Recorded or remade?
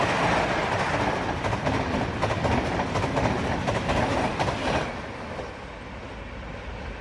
recorded